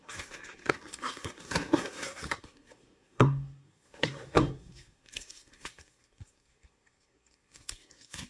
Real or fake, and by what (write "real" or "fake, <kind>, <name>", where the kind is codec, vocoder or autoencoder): fake, codec, SNAC